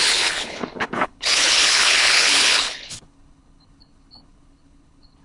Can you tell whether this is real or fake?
fake